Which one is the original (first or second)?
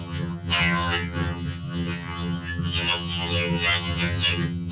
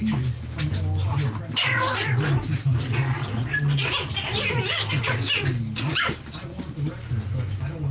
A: second